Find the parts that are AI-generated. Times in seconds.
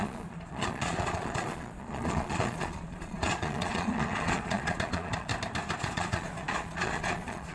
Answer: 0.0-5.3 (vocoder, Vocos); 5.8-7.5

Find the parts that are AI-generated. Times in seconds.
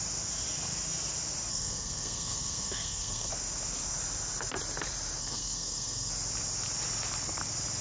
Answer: 1.5-3.3 (codec, SNAC); 5.2-6.1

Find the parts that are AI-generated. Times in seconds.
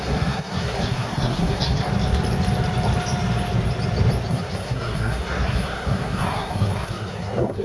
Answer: 0.0-1.9 (codec, SNAC); 4.3-7.6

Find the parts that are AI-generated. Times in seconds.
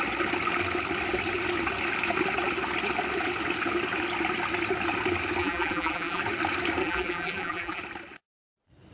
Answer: 5.4-6.2 (vocoder, BigVGAN v2); 6.8-7.8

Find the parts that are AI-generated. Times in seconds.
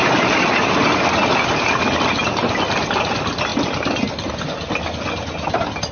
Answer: 0.0-0.8 (vocoder, BigVGAN v2)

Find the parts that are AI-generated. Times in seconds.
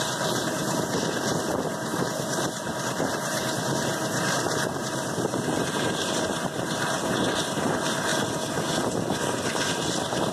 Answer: 0.0-8.1 (vocoder, BigVGAN v2); 9.7-10.3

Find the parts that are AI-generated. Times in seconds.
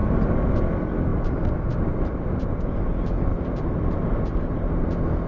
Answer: 0.0-0.6 (vocoder, BigVGAN v2); 1.1-2.8; 3.3-4.7